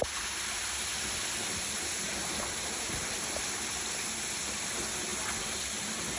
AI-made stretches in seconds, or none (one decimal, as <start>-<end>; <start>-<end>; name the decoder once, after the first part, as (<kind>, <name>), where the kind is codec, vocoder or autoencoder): none